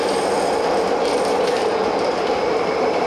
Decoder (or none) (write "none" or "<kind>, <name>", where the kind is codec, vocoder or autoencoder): vocoder, BigVGAN v2